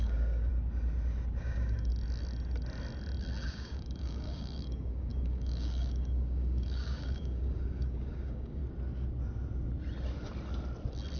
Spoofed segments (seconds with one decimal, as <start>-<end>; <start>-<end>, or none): 0.0-0.5; 1.4-1.9; 3.5-8.6